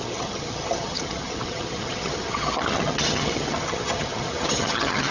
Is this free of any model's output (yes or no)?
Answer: no